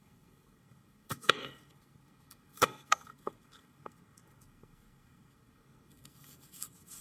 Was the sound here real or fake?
fake